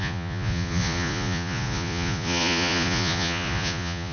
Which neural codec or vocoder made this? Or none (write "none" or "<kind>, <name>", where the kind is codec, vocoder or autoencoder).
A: vocoder, Vocos